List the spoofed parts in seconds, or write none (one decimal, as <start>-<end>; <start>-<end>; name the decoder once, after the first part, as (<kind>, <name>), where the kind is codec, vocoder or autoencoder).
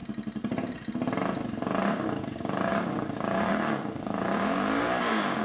1.8-5.4 (codec, DAC)